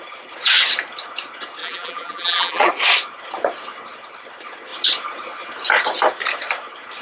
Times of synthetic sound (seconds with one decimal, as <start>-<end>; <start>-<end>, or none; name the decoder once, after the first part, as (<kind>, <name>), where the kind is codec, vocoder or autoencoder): 1.6-2.7 (vocoder, BigVGAN v2)